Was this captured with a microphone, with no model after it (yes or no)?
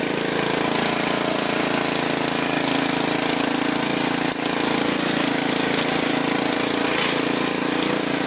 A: yes